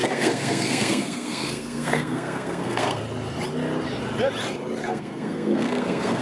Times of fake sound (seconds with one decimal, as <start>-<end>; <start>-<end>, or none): 0.0-3.0; 4.8-6.2